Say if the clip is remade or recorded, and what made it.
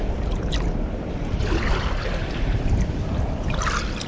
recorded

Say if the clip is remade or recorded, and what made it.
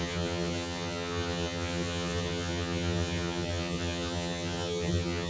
remade, vocoder, HiFi-GAN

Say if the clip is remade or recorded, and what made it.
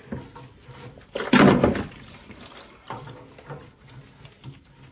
recorded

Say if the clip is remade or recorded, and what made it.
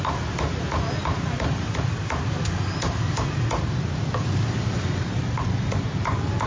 recorded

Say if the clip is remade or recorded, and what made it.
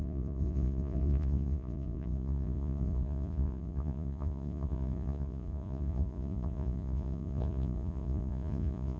remade, vocoder, Vocos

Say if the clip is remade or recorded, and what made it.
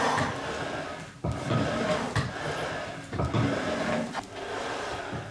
recorded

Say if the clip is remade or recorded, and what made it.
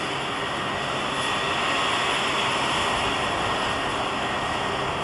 recorded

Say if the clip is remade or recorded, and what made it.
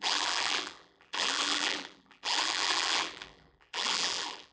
remade, vocoder, BigVGAN v2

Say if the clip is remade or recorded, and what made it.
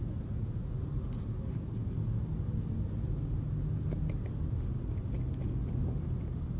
recorded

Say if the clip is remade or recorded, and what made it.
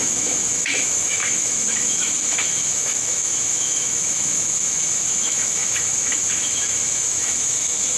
remade, autoencoder, DAC-VAE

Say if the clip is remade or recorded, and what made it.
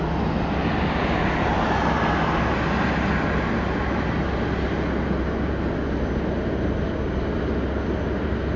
recorded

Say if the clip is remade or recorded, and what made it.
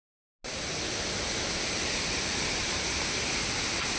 recorded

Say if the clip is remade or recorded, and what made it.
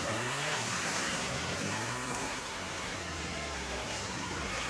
remade, codec, SNAC